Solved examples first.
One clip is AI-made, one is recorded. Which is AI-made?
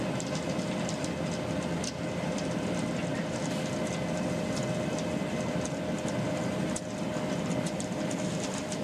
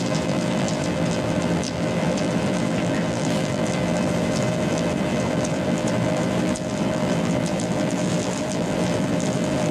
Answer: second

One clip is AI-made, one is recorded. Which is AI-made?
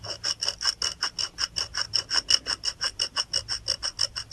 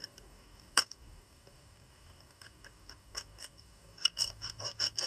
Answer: second